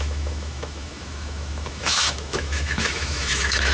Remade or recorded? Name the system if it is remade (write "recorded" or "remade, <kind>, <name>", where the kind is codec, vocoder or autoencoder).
remade, autoencoder, DAC-VAE